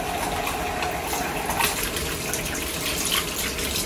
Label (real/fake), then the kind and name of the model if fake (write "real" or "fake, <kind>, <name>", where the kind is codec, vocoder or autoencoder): real